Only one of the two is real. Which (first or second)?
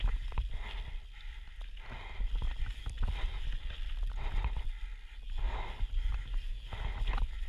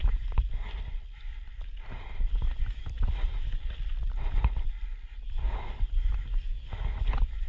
first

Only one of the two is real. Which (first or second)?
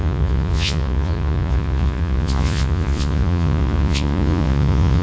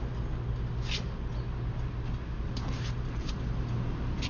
second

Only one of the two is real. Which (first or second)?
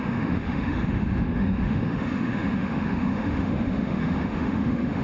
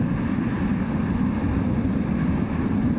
second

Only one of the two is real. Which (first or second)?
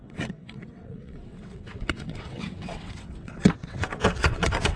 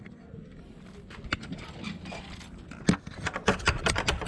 second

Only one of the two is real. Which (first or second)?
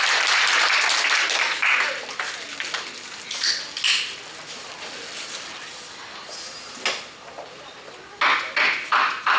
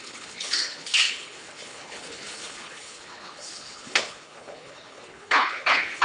first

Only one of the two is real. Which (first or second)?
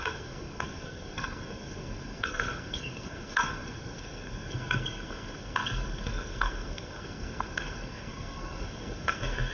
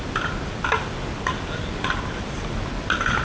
second